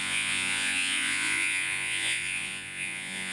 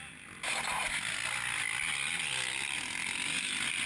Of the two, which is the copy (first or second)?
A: first